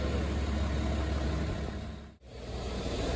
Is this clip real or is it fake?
real